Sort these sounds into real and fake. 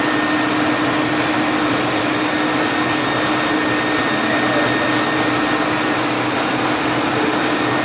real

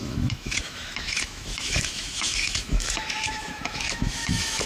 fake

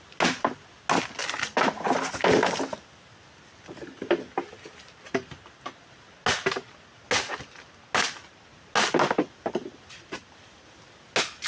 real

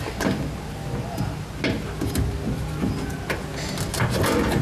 real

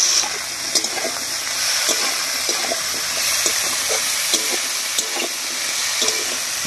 real